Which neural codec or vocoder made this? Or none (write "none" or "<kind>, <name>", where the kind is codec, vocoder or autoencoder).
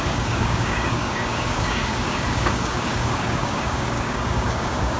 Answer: codec, DAC